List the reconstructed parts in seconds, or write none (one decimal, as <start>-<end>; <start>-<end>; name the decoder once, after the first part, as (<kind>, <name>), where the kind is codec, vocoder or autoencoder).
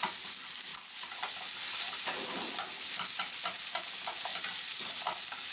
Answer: 0.7-1.3 (vocoder, BigVGAN v2); 4.3-4.9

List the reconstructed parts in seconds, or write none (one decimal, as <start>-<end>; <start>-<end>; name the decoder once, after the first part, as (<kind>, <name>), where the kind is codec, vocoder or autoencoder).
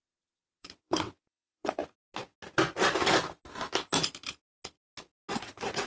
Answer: 0.0-1.8 (vocoder, WaveNeXt); 5.3-5.9